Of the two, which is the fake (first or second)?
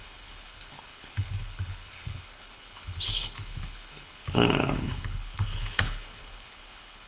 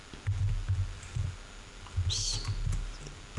first